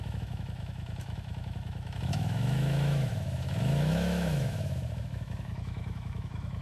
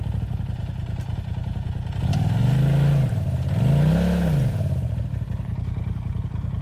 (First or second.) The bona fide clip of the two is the second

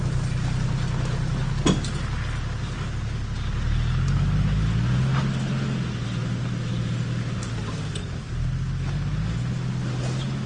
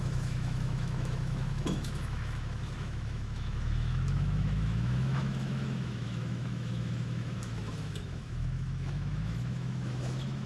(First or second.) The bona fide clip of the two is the first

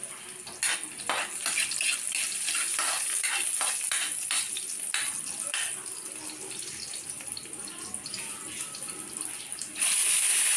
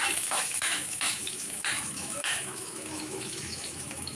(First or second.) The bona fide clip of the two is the first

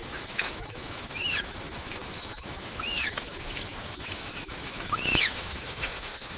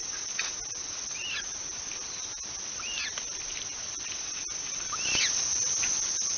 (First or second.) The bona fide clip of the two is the second